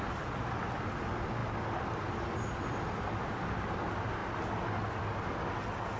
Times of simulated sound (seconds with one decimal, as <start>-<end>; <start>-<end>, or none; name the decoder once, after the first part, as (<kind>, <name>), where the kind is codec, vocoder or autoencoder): 1.4-2.5 (vocoder, BigVGAN v2)